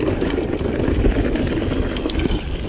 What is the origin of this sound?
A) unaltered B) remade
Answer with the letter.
A